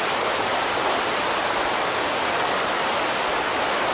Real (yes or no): yes